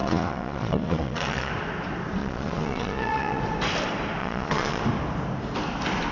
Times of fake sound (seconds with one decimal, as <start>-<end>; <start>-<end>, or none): 0.0-1.5; 2.2-3.4; 4.2-4.8